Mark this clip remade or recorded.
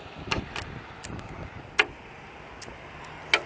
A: recorded